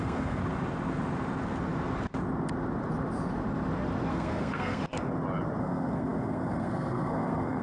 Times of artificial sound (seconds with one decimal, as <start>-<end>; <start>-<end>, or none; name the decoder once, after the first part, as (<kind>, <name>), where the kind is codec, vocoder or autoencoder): 0.0-0.4 (codec, SNAC); 4.1-4.8; 5.6-7.6